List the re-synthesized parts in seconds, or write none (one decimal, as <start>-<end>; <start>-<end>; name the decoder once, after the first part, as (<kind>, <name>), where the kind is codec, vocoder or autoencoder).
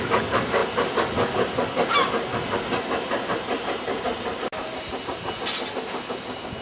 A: none